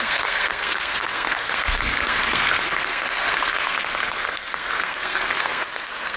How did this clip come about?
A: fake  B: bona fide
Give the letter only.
A